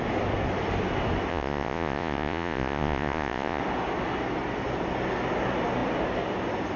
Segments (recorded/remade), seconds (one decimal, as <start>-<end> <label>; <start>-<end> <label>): 0.0-1.3 recorded; 1.3-3.6 remade; 3.6-6.8 recorded